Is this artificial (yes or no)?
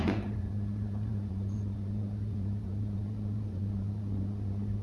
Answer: yes